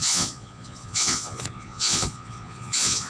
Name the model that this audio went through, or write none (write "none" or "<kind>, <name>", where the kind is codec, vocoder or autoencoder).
vocoder, Vocos